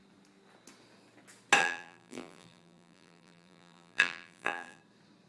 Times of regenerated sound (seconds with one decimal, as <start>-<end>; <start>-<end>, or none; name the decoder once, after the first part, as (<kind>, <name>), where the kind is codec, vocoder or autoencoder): 1.6-4.8 (vocoder, BigVGAN v2)